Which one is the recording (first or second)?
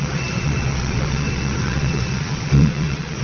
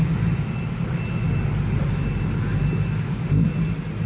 second